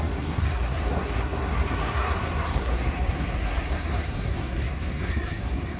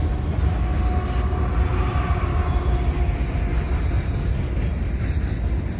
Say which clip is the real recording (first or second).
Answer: second